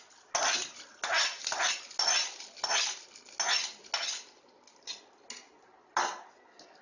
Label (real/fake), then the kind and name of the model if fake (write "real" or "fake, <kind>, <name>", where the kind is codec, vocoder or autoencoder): real